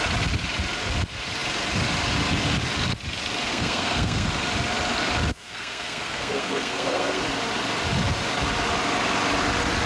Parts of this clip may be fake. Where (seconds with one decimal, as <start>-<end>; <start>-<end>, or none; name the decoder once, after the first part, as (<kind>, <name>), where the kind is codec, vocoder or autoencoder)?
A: 3.5-4.3 (codec, SNAC); 5.3-7.2